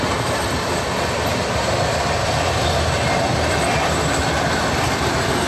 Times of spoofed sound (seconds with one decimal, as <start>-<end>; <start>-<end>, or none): none